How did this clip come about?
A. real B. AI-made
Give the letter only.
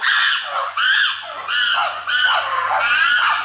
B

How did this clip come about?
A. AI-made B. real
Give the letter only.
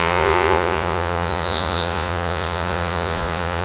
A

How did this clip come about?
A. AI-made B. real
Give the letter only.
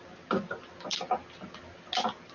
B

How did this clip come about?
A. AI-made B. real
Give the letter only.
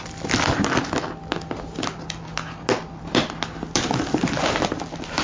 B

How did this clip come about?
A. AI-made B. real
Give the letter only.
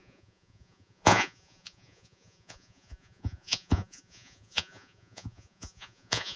A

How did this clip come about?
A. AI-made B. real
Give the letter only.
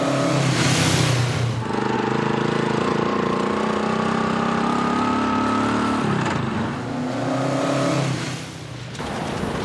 B